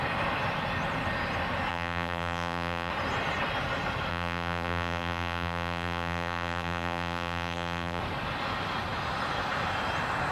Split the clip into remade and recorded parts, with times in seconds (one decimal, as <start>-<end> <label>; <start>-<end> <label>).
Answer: 0.0-1.7 recorded; 1.7-2.9 remade; 2.9-4.1 recorded; 4.1-8.0 remade; 8.0-10.3 recorded